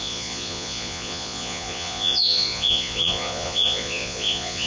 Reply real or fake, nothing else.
fake